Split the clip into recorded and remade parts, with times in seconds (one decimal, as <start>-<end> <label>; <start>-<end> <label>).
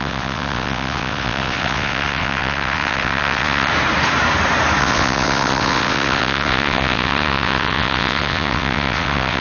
0.0-3.7 remade; 3.7-4.8 recorded; 4.8-9.4 remade